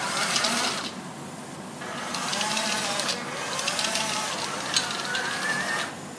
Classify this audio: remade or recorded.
recorded